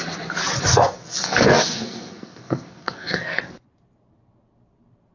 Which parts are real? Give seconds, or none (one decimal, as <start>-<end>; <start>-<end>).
0.0-0.7; 3.4-5.1